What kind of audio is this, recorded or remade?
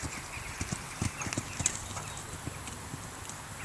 recorded